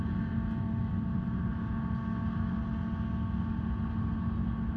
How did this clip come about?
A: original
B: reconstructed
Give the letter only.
A